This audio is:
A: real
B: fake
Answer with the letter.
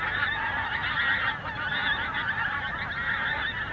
A